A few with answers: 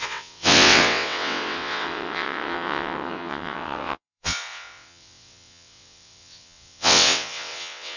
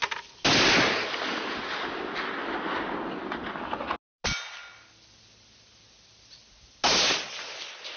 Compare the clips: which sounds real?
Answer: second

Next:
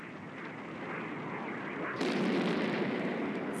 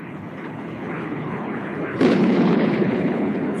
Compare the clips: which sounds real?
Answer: first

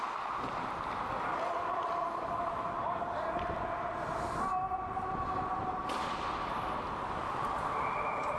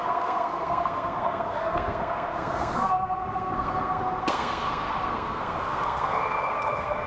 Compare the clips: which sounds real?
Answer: first